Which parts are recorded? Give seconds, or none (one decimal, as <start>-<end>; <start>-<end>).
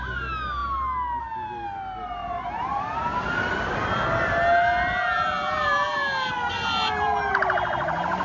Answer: 0.0-8.2